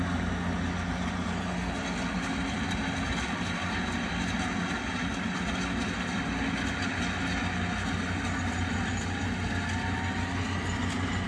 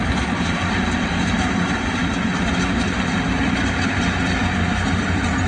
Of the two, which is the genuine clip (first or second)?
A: first